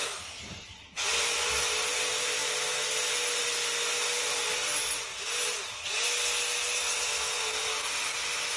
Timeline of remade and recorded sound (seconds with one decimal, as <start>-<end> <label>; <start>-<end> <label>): 0.0-8.6 recorded